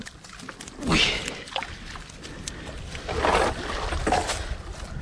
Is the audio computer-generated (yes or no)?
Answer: no